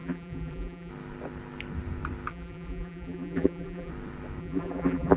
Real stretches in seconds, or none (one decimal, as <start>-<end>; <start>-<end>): 0.9-2.3; 3.9-4.4